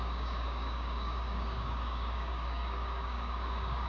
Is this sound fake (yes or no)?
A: yes